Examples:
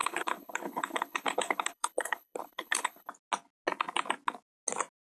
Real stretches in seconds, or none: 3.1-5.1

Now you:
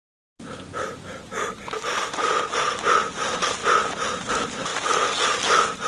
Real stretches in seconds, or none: 0.0-5.9

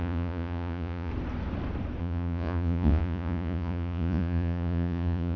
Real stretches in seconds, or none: 1.1-2.0

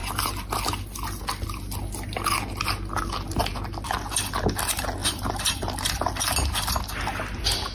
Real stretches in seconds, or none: 0.0-5.0; 5.9-7.7

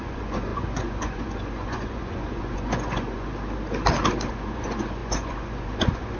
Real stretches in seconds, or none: 3.3-4.3

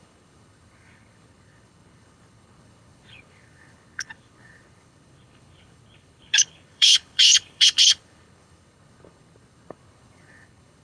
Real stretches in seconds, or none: none